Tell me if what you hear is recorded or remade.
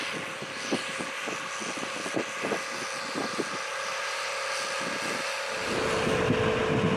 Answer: recorded